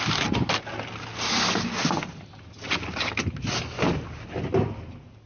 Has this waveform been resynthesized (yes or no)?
no